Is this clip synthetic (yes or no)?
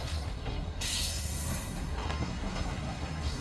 yes